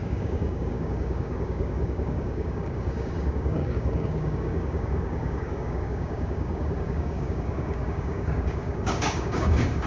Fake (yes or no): yes